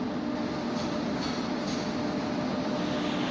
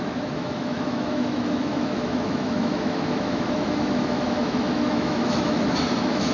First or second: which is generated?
second